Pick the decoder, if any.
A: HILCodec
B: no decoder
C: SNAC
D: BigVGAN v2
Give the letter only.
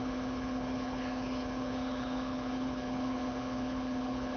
A